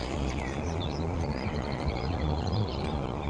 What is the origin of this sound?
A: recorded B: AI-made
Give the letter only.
B